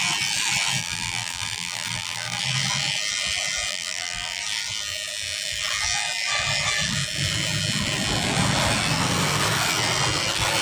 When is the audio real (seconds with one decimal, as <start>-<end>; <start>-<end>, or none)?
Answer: 0.0-0.8; 2.4-3.7; 4.4-10.6